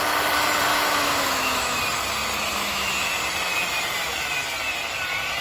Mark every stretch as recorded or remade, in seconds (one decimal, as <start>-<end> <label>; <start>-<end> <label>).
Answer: 0.0-0.7 recorded; 0.7-1.8 remade; 1.8-2.4 recorded; 2.4-3.1 remade; 3.1-5.4 recorded